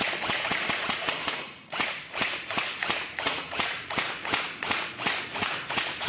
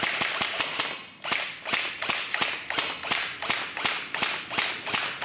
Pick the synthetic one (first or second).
first